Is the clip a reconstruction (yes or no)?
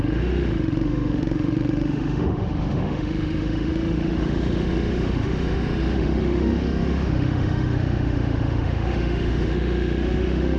yes